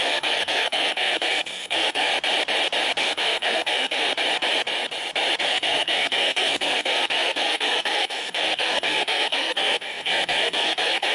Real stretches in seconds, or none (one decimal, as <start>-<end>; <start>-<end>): 2.1-3.0; 4.1-5.4